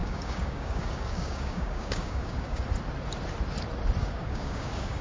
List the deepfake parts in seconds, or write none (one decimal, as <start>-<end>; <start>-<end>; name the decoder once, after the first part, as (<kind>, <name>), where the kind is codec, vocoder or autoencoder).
0.0-2.6 (codec, DAC); 4.0-5.0